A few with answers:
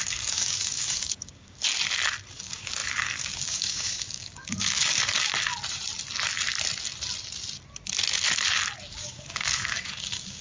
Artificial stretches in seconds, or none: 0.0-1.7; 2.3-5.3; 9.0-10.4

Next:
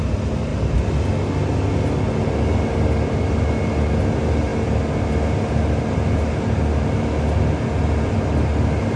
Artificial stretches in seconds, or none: none

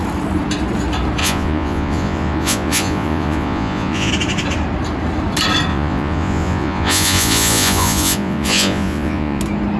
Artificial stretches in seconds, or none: 1.2-4.1; 5.7-9.4

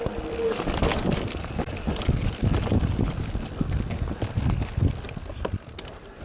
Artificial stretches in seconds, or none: 0.9-2.2

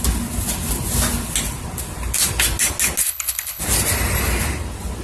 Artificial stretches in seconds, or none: 3.0-3.6

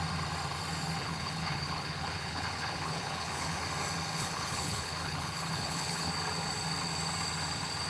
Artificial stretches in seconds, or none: 1.0-3.6; 4.1-6.1